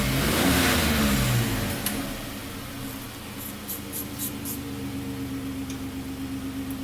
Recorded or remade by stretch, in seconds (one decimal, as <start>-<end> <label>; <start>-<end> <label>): 0.0-6.8 recorded